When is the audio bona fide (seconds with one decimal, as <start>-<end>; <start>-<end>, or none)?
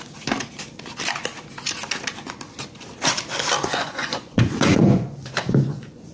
0.0-3.6